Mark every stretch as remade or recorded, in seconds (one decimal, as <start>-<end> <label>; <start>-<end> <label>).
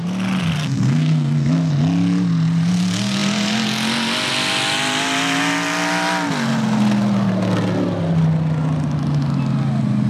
0.0-0.5 recorded; 0.5-1.7 remade; 1.7-10.1 recorded